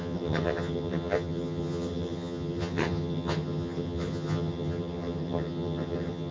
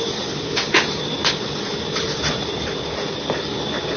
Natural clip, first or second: second